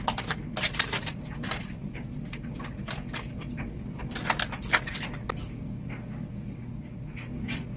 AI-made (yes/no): no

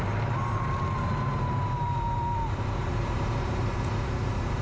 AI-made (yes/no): yes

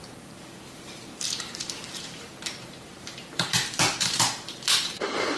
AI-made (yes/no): yes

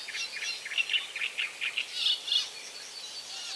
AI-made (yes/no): no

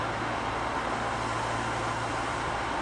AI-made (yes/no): no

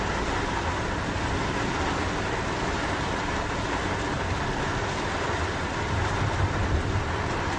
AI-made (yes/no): no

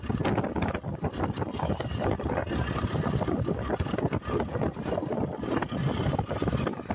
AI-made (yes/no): no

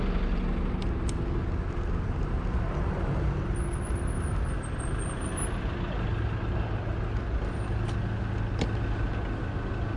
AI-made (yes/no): no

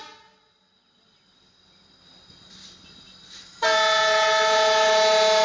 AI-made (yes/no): no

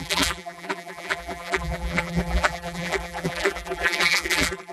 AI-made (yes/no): yes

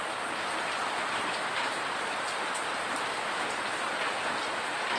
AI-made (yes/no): no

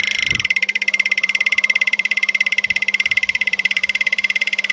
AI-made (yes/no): yes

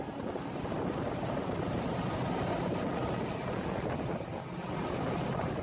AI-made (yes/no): no